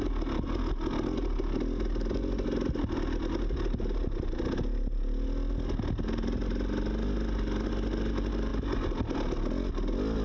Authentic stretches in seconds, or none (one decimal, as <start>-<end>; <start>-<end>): 0.0-10.2